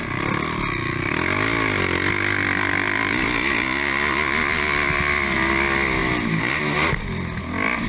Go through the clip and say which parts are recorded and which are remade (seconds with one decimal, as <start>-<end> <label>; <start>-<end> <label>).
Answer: 0.0-7.9 recorded